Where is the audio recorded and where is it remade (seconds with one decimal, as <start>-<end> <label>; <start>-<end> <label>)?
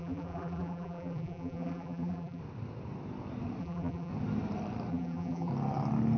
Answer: 0.0-2.4 remade; 2.4-3.6 recorded; 3.6-4.1 remade; 4.1-4.9 recorded; 4.9-5.5 remade; 5.5-6.2 recorded